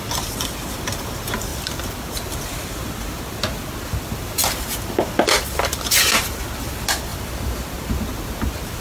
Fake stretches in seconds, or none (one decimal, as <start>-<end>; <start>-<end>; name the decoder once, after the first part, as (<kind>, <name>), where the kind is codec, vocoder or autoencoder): 7.1-8.0 (vocoder, BigVGAN v2)